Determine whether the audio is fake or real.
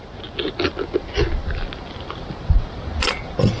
real